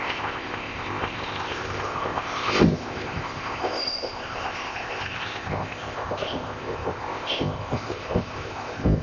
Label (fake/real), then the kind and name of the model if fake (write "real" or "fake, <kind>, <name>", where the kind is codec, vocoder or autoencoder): fake, codec, ZipCodec